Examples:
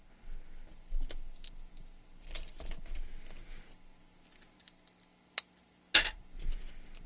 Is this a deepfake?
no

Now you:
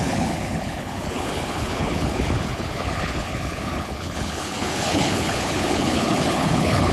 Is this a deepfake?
yes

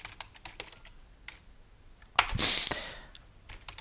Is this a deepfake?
no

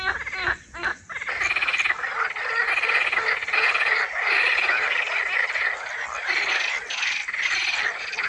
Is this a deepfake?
no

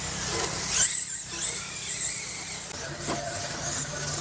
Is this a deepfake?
no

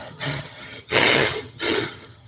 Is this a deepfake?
yes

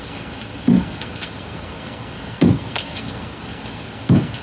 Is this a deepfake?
yes